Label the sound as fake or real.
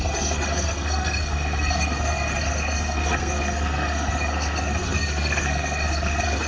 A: fake